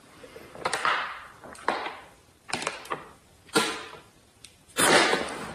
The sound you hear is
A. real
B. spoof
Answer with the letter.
B